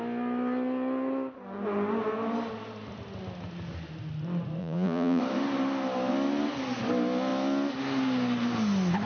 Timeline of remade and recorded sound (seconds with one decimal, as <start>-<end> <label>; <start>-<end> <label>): 0.0-4.6 recorded; 4.6-5.2 remade; 5.2-9.1 recorded